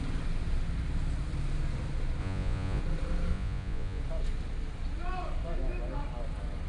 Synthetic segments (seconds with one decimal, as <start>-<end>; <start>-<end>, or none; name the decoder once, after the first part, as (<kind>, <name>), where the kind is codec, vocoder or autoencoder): 2.2-2.8 (vocoder, Vocos); 3.3-4.0